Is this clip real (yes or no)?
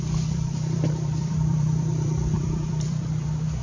no